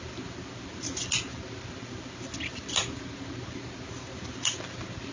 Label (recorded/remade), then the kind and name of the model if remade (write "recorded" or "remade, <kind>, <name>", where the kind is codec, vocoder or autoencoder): recorded